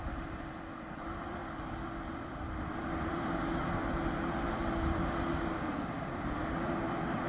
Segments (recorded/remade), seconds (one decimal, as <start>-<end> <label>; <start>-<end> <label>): 0.0-1.4 remade; 1.4-2.1 recorded; 2.1-3.8 remade; 3.8-5.7 recorded; 5.7-7.3 remade